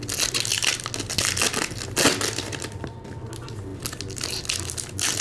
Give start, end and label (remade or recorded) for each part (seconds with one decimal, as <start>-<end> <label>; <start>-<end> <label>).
0.0-5.2 recorded